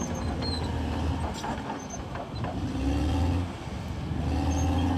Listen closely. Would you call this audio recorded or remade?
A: recorded